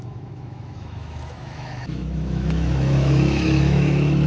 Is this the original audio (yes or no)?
no